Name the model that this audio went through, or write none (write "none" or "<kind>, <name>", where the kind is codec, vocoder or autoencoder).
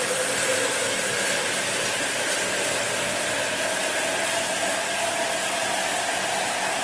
none